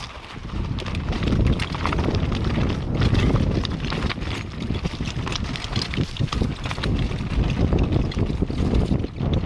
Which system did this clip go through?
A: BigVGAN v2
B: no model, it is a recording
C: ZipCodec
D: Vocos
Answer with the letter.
B